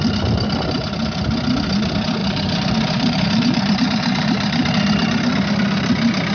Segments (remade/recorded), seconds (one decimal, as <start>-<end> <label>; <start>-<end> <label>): 0.0-2.2 recorded; 2.2-4.7 remade; 4.7-6.3 recorded